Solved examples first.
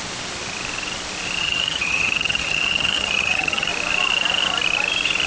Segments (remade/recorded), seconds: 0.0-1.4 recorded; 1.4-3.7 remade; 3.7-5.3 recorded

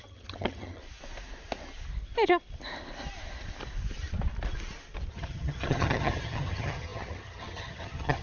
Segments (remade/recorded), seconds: 0.0-0.8 remade; 0.8-5.1 recorded; 5.1-8.2 remade

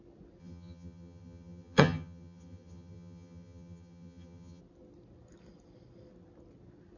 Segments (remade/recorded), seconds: 0.0-0.4 recorded; 0.4-4.6 remade; 4.6-7.0 recorded

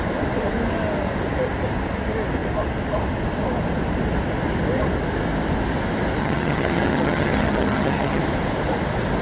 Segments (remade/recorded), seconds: 0.0-6.2 recorded; 6.2-8.2 remade; 8.2-9.2 recorded

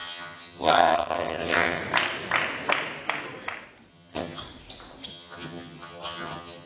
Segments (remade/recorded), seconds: 0.0-1.8 remade; 1.8-3.9 recorded; 3.9-4.4 remade; 4.4-5.1 recorded; 5.1-6.7 remade

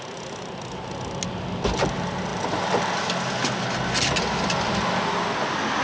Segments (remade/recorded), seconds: 0.0-5.8 recorded

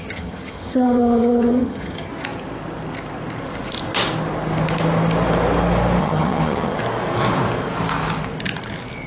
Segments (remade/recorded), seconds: 0.0-2.1 remade; 2.1-6.0 recorded; 6.0-6.8 remade; 6.8-9.1 recorded